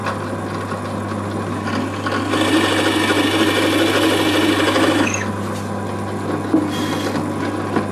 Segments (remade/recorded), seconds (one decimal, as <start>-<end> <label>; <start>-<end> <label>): 0.0-7.9 recorded